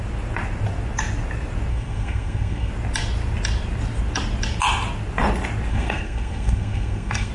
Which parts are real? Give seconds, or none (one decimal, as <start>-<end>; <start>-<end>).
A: 0.0-1.7; 2.7-5.7